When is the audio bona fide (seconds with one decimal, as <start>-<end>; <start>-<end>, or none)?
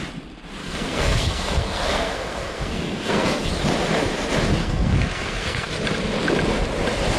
0.0-0.6; 3.5-4.6; 5.7-7.2